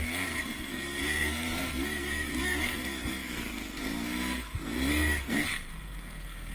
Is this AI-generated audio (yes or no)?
yes